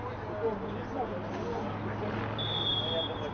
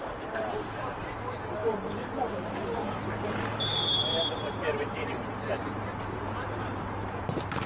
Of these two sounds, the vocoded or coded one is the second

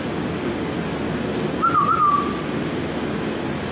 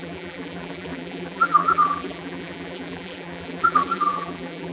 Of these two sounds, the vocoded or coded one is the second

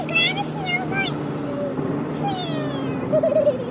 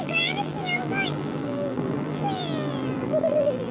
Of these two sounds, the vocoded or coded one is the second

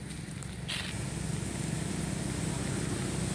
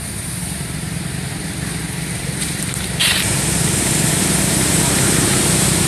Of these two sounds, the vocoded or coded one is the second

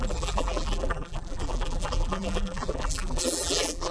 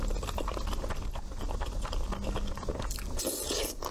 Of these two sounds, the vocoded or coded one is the first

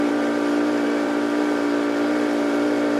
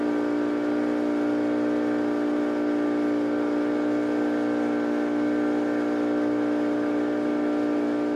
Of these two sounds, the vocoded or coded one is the first